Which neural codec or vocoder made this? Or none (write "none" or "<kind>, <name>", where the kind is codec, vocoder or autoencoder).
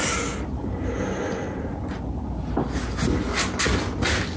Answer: none